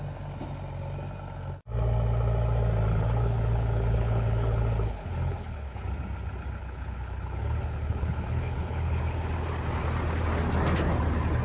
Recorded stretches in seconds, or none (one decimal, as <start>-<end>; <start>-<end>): 0.0-2.9; 5.8-6.6; 9.0-11.4